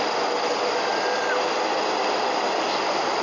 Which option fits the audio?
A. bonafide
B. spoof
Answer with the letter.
A